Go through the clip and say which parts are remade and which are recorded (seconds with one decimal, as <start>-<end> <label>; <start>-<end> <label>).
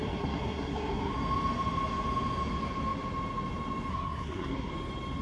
0.0-1.1 remade; 1.1-3.9 recorded; 3.9-4.7 remade; 4.7-5.2 recorded